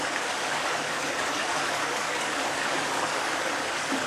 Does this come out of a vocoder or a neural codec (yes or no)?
yes